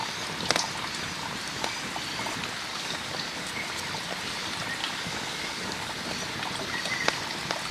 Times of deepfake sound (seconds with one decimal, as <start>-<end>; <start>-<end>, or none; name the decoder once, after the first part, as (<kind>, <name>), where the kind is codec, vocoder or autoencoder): 2.7-3.5 (codec, DAC); 4.8-5.9